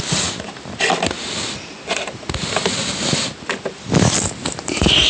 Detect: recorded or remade recorded